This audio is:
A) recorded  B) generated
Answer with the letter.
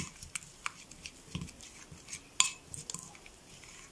A